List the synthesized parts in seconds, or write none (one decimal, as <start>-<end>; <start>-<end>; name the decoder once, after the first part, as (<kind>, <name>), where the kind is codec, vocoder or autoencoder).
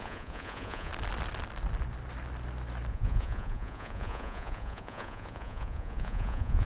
0.0-0.9 (vocoder, Vocos); 2.9-6.6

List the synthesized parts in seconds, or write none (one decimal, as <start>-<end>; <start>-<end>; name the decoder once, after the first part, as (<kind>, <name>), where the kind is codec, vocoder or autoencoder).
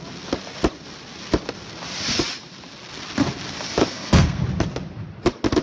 3.8-4.4 (codec, SNAC)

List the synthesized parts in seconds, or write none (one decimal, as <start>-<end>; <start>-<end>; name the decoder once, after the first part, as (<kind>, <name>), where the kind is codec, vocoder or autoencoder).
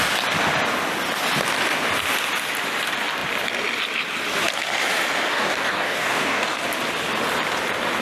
5.3-6.6 (codec, DAC)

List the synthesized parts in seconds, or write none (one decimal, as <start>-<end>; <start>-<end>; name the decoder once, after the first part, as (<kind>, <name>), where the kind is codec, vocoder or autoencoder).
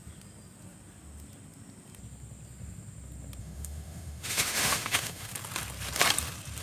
3.4-5.3 (autoencoder, DAC-VAE)